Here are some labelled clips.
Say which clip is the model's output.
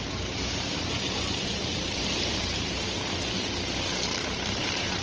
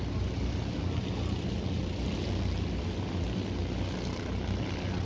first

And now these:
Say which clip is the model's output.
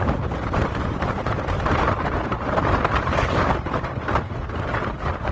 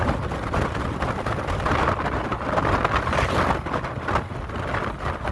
first